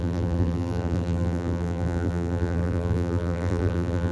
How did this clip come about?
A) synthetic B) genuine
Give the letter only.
A